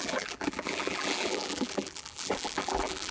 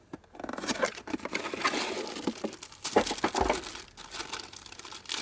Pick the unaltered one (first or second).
second